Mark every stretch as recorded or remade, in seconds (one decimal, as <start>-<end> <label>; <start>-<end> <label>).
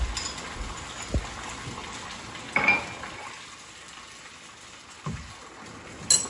0.0-6.3 recorded